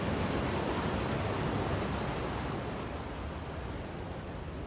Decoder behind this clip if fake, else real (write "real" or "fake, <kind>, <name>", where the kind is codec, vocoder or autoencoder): real